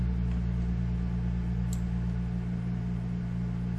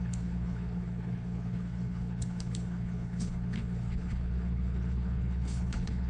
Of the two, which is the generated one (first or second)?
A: second